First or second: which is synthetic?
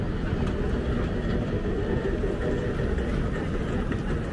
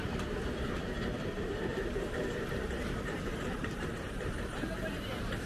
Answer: second